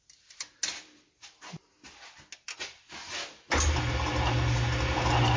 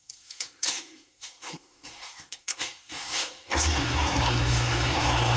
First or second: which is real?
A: first